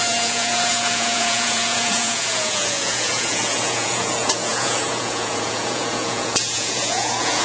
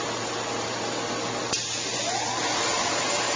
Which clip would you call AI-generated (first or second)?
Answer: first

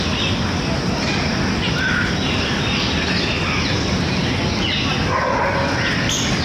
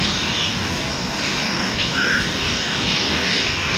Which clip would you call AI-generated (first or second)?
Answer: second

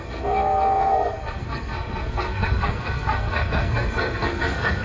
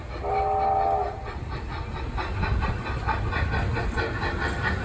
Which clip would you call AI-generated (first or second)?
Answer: first